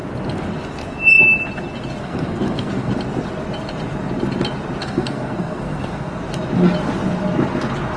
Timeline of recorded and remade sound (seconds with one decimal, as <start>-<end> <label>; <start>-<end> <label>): 0.0-2.0 recorded; 2.0-2.9 remade; 2.9-4.8 recorded; 4.8-6.2 remade; 6.2-8.0 recorded